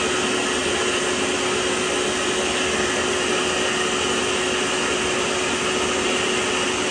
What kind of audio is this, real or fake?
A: real